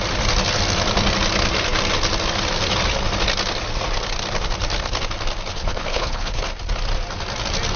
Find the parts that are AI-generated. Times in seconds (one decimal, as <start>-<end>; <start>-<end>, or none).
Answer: 5.5-6.4